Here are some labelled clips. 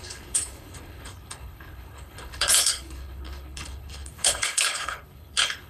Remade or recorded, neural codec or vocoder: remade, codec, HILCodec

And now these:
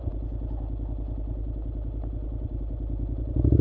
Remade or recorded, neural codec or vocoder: recorded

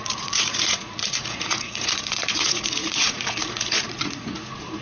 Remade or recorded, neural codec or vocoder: remade, vocoder, Vocos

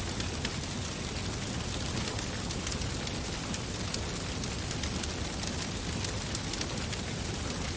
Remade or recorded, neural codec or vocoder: recorded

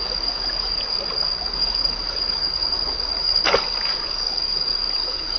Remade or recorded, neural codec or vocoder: remade, codec, DAC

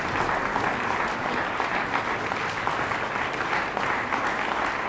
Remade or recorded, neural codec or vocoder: recorded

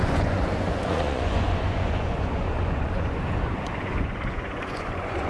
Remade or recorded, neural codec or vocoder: remade, vocoder, Vocos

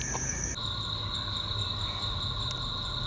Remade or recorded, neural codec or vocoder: recorded